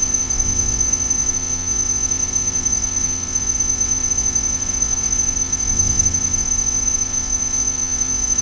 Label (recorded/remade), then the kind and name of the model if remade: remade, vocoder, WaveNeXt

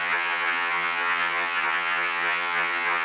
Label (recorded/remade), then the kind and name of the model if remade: remade, vocoder, HiFi-GAN